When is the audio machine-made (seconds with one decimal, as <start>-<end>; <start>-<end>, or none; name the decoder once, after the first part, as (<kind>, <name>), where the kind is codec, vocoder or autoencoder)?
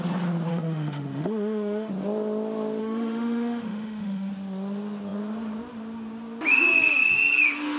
0.5-1.9 (autoencoder, DAC-VAE); 2.8-4.3